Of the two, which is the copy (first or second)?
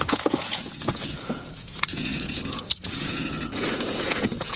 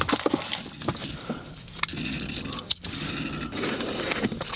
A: first